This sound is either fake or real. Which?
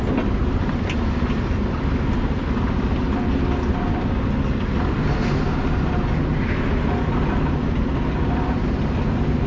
real